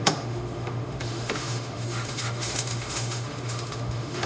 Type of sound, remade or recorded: remade